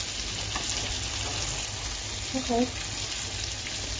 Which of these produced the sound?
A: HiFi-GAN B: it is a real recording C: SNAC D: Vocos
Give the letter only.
B